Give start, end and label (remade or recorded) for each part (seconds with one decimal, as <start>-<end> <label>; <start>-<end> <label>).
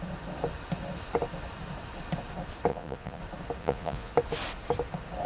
0.0-2.7 recorded; 2.7-3.2 remade; 3.2-3.6 recorded; 3.6-4.1 remade; 4.1-5.3 recorded